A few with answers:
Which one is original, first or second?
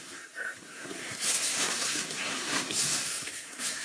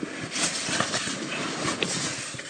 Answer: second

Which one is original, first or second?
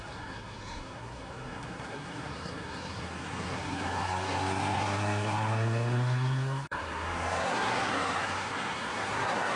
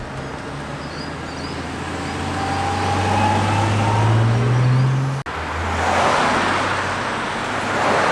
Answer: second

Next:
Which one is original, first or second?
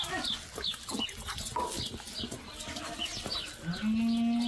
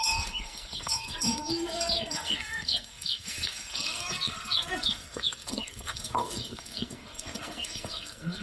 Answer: first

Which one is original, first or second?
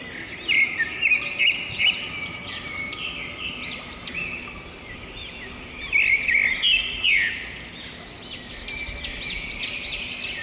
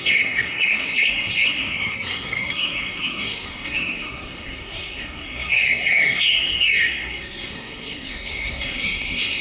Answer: first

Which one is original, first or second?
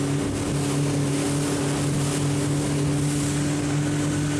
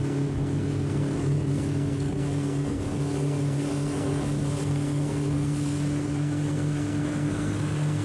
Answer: first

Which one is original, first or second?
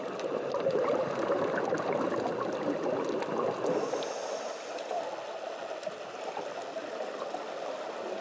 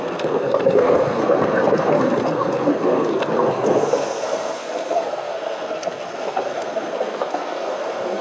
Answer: first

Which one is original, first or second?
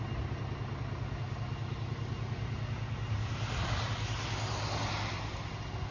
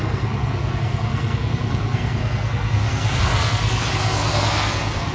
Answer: first